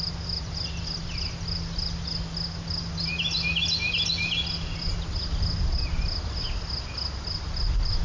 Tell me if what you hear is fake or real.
real